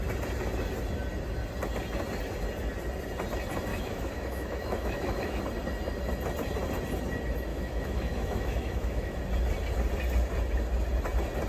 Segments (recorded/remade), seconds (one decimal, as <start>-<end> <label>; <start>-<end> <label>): 0.0-3.7 recorded; 3.7-5.4 remade; 5.4-7.5 recorded; 7.5-9.2 remade; 9.2-11.5 recorded